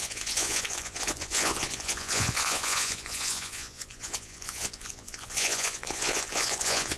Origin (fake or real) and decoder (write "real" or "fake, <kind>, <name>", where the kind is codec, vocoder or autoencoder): fake, vocoder, Vocos